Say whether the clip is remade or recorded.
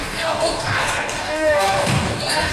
remade